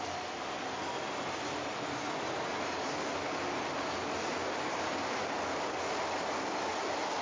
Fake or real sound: real